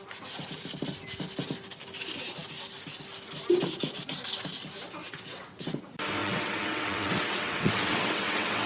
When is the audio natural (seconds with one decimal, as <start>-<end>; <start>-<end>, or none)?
0.0-5.0; 5.8-6.2